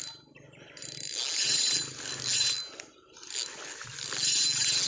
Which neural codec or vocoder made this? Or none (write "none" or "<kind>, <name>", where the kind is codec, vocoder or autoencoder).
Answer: none